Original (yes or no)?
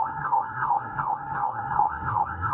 no